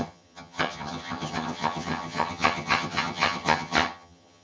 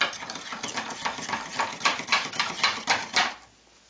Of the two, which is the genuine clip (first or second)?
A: second